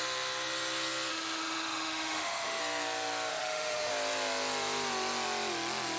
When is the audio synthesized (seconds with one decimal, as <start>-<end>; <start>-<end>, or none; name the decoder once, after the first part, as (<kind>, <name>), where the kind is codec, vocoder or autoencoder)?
1.1-2.6 (autoencoder, DAC-VAE); 3.3-3.9